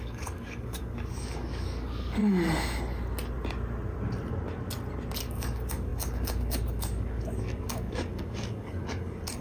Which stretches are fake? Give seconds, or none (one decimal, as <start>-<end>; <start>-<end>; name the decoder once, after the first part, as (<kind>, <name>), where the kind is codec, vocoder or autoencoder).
0.0-2.2 (codec, DAC); 5.2-9.4

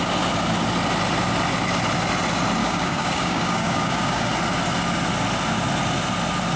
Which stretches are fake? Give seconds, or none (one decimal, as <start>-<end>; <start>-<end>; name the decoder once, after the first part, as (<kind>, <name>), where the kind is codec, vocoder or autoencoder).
2.6-4.3 (codec, DAC)